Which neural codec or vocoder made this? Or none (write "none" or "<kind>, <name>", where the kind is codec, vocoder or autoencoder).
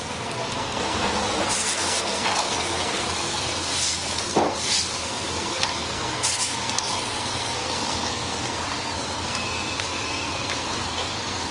codec, SNAC